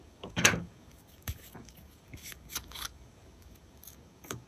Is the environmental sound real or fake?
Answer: fake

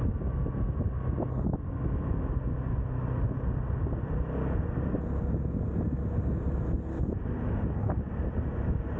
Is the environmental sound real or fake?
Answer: real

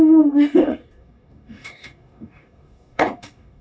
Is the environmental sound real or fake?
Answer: fake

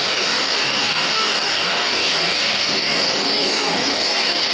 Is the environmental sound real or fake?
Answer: fake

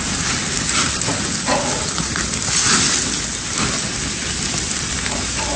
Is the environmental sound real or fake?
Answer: real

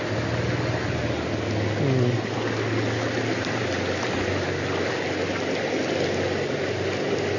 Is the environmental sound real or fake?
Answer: real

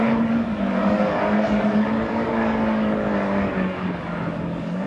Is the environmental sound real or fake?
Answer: fake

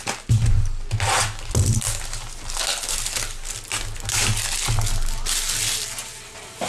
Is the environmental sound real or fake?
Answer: real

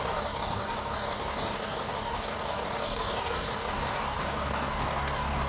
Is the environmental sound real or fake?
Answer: fake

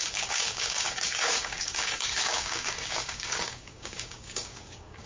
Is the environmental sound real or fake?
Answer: fake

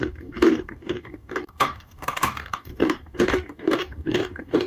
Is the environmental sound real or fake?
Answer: fake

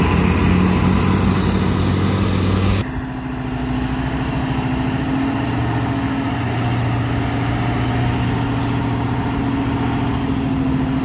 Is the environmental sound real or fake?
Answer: real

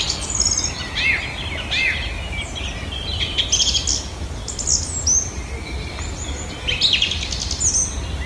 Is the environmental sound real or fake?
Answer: real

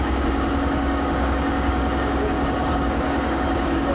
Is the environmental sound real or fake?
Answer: fake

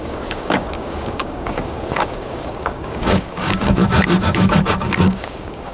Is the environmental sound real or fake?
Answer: fake